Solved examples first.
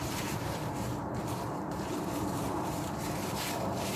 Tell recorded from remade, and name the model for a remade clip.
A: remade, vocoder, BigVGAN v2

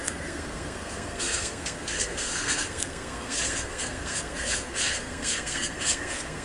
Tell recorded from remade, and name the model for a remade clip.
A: remade, codec, SNAC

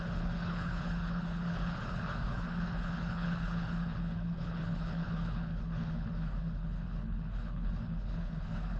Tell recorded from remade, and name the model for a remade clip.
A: remade, codec, HILCodec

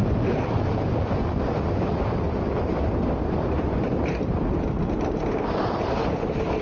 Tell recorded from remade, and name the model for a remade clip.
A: recorded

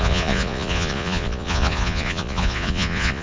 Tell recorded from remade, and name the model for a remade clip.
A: remade, vocoder, Vocos